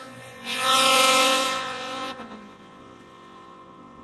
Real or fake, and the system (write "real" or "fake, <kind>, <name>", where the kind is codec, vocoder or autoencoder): fake, vocoder, Vocos